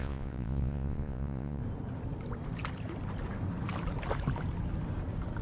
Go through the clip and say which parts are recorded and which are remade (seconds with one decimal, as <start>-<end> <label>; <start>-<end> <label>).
0.0-1.6 remade; 1.6-5.4 recorded